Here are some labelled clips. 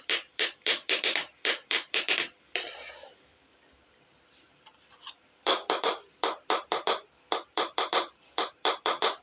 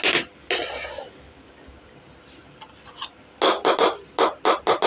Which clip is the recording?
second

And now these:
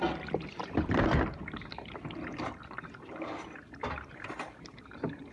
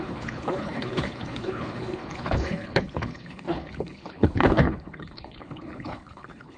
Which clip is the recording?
first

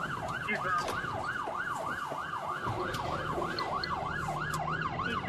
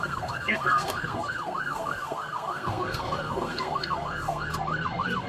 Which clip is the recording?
first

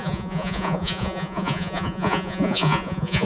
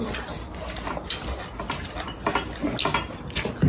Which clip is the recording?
second